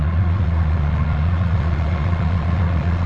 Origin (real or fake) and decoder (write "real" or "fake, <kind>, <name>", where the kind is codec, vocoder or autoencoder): fake, vocoder, Vocos